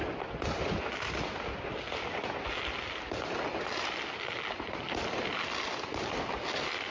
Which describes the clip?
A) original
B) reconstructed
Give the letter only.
A